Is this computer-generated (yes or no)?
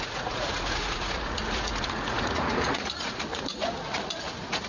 yes